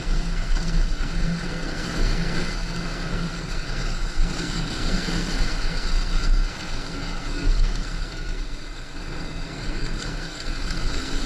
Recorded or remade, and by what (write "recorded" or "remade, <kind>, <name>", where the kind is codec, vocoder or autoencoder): remade, codec, SNAC